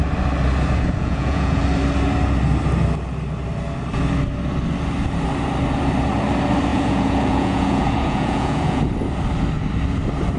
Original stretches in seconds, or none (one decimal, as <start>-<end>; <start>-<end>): 0.0-1.0; 1.6-6.7; 8.8-10.4